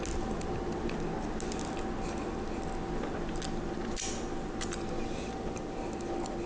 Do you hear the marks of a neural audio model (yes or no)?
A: no